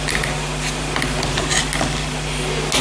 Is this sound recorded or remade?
recorded